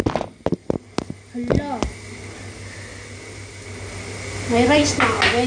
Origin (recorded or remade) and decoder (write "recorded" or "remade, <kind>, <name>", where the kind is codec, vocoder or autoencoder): recorded